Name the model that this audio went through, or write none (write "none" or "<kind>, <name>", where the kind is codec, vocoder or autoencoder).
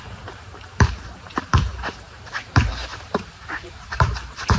vocoder, BigVGAN v2